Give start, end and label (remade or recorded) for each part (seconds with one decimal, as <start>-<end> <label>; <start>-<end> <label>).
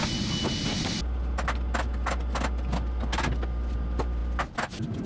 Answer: 0.0-5.1 recorded